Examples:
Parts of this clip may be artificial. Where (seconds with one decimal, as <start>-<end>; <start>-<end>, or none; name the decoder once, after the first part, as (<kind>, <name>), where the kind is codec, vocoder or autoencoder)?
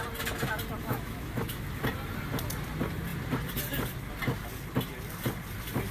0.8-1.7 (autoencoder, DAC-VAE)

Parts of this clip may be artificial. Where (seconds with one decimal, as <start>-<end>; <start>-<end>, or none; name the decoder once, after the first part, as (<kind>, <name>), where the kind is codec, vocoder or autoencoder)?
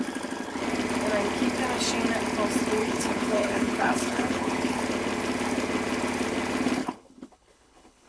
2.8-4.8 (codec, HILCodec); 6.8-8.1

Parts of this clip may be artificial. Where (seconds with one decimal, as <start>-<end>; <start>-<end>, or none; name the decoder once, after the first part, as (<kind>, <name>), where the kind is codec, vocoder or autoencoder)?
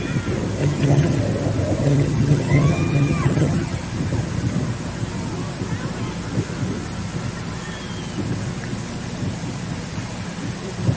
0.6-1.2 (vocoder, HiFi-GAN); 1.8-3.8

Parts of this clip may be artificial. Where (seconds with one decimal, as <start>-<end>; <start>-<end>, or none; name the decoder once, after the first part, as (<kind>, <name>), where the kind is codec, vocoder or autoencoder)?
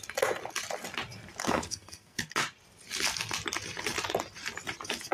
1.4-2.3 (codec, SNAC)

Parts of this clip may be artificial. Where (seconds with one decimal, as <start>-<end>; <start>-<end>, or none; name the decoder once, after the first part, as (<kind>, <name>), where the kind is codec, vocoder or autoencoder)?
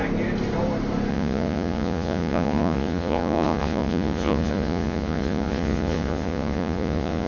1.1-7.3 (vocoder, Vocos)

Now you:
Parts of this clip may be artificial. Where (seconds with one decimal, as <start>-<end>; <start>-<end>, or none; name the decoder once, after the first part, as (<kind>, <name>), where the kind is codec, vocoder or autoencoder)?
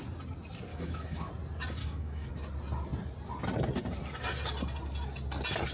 0.7-1.3 (autoencoder, DAC-VAE); 1.8-2.3